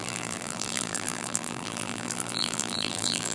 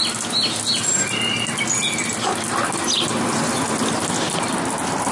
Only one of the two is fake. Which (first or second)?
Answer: first